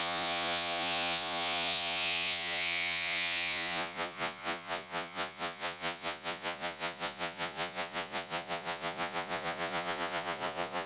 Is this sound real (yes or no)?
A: no